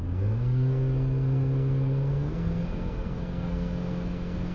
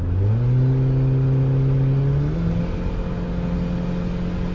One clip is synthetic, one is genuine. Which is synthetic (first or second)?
first